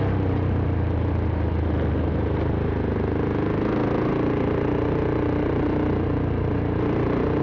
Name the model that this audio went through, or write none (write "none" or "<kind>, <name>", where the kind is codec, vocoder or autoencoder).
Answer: none